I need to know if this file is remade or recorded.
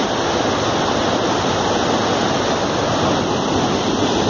recorded